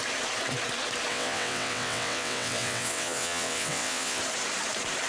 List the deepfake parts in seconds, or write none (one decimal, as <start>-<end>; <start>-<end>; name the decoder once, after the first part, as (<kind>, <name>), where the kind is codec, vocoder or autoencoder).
1.1-4.2 (vocoder, WaveNeXt)